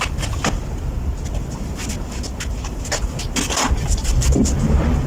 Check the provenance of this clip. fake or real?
real